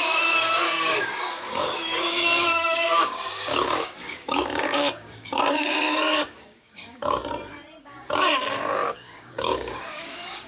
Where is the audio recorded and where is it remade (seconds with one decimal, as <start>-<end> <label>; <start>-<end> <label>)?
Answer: 0.0-7.2 remade; 7.2-7.8 recorded; 7.8-10.5 remade